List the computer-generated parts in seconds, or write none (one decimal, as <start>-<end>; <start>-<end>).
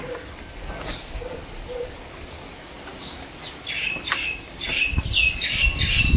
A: none